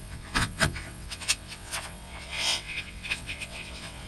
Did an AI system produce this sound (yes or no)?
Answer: yes